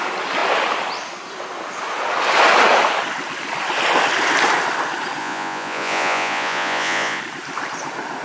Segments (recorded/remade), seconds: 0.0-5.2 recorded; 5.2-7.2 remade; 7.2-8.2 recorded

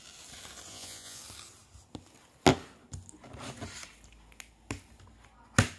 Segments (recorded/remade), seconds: 0.0-0.7 recorded; 0.7-1.2 remade; 1.2-5.8 recorded

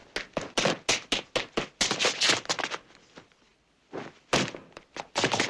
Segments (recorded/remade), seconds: 0.0-5.5 recorded

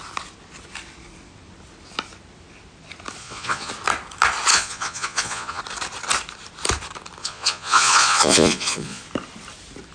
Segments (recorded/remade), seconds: 0.0-3.2 recorded; 3.2-3.7 remade; 3.7-4.5 recorded; 4.5-5.6 remade; 5.6-7.2 recorded; 7.2-9.0 remade; 9.0-9.9 recorded

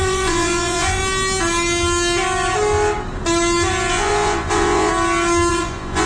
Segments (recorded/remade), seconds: 0.0-1.0 remade; 1.0-3.9 recorded; 3.9-4.9 remade; 4.9-5.5 recorded; 5.5-6.1 remade

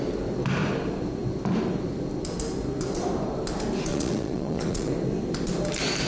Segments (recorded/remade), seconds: 0.0-3.9 recorded; 3.9-4.9 remade; 4.9-6.1 recorded